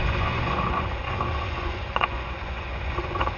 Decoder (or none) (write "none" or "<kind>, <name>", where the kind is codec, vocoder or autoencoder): vocoder, Vocos